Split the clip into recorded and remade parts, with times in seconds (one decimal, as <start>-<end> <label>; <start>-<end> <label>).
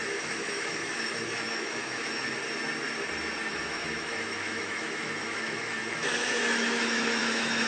0.0-2.4 remade; 2.4-3.5 recorded; 3.5-7.7 remade